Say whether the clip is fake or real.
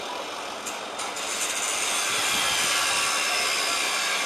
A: real